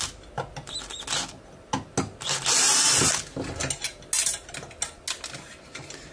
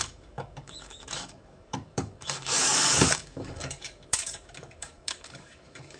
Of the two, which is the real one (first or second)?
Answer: first